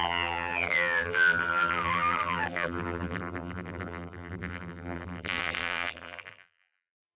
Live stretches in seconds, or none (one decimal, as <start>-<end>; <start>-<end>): none